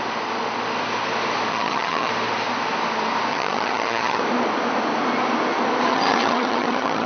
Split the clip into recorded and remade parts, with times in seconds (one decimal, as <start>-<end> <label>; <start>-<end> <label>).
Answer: 0.0-1.5 recorded; 1.5-2.1 remade; 2.1-3.3 recorded; 3.3-4.2 remade; 4.2-5.9 recorded; 5.9-7.1 remade